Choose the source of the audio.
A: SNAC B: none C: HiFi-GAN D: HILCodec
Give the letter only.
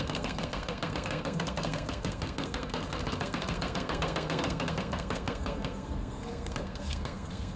A